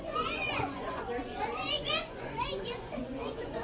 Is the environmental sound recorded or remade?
remade